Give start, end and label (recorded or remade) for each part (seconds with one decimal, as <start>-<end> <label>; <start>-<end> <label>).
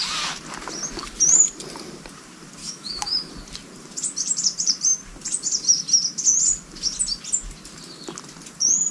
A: 0.0-2.6 recorded; 2.6-3.3 remade; 3.3-8.9 recorded